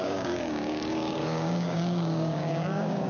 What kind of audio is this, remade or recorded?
remade